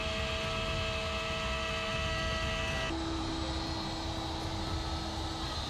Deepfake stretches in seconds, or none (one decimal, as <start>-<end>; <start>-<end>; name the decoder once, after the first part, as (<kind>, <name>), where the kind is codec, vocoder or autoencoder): none